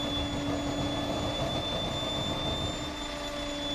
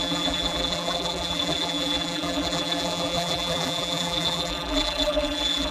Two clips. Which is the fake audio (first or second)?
second